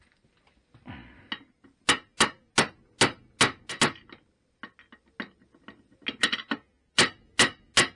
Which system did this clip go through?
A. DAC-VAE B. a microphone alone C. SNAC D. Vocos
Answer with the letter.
B